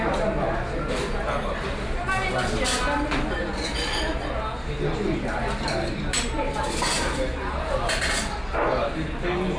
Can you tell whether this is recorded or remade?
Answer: recorded